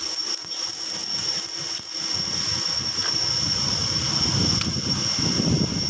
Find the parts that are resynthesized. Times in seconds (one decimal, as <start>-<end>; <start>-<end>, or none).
none